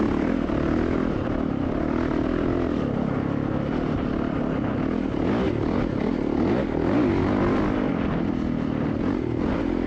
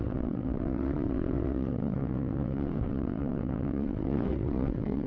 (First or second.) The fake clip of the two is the second